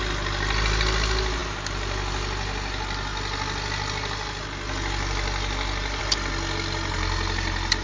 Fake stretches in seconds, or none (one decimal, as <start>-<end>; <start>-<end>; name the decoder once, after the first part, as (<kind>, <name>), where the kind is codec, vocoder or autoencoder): none